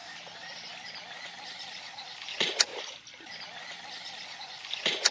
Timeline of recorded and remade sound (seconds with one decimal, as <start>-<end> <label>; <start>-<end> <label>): 0.0-2.3 recorded; 2.3-2.7 remade; 2.7-4.4 recorded; 4.4-5.1 remade